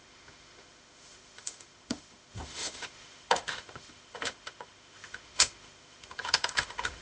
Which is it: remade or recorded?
remade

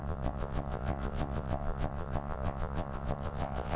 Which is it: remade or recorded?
remade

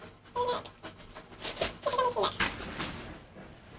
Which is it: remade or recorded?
recorded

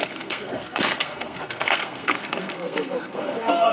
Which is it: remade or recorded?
remade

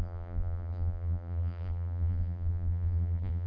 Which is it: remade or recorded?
remade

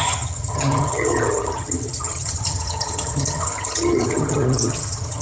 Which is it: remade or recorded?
remade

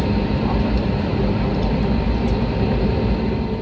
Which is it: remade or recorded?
recorded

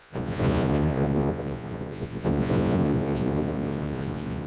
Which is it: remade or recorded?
remade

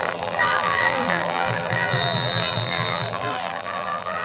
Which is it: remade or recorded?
remade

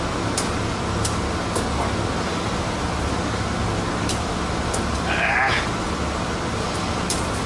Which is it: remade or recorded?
recorded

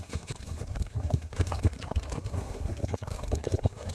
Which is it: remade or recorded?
remade